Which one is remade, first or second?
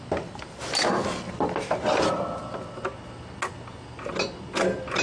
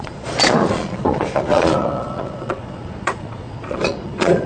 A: second